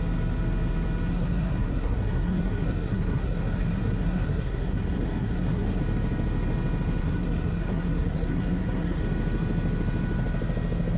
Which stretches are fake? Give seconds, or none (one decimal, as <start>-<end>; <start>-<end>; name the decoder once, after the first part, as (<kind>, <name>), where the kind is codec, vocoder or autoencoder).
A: 1.1-5.8 (codec, SNAC); 7.0-9.0